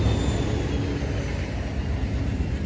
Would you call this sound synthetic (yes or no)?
no